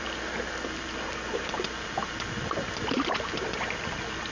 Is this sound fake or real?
fake